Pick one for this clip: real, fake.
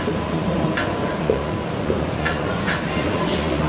fake